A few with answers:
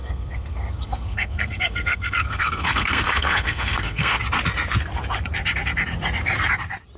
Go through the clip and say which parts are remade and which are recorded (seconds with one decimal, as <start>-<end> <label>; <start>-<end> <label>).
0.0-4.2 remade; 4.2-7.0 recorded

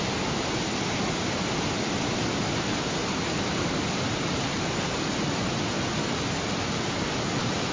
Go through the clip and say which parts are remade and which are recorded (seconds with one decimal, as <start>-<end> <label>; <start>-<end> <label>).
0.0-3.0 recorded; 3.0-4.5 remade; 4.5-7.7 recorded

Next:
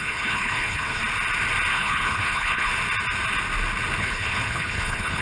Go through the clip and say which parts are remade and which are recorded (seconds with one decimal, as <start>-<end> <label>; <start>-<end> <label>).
0.0-1.0 remade; 1.0-1.7 recorded; 1.7-2.7 remade; 2.7-4.0 recorded; 4.0-5.2 remade